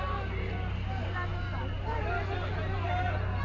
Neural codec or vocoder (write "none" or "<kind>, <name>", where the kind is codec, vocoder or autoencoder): none